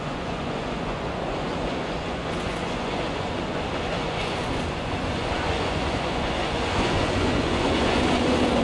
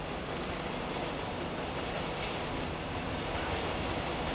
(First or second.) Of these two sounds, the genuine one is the second